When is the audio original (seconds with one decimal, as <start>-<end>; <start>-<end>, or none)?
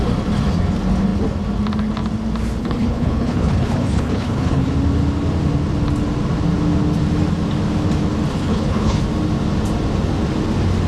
0.0-2.6; 4.7-8.3; 9.0-10.9